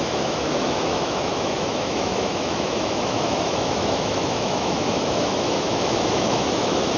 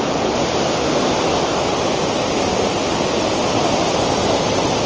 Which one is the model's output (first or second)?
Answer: first